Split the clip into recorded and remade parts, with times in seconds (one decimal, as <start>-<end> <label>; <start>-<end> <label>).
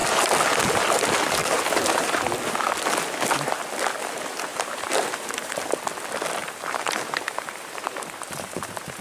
0.0-1.4 recorded; 1.4-2.2 remade; 2.2-4.5 recorded; 4.5-5.7 remade; 5.7-6.4 recorded; 6.4-9.0 remade